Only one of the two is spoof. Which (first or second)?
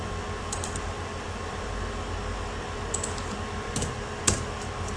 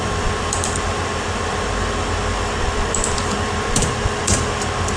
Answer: second